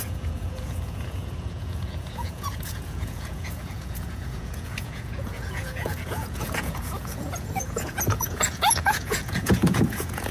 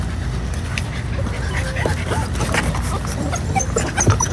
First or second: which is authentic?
second